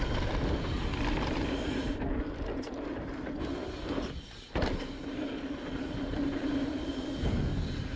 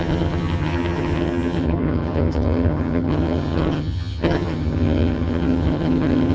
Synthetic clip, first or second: second